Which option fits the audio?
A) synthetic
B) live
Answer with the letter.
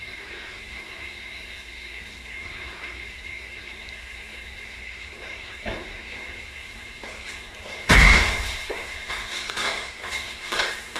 A